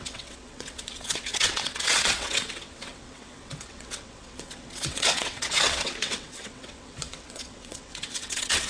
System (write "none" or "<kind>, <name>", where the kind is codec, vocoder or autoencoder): vocoder, WaveNeXt